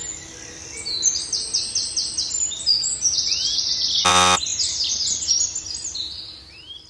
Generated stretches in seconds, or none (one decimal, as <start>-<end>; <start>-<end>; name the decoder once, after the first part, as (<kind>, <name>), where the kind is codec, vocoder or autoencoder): 4.1-6.9 (vocoder, BigVGAN v2)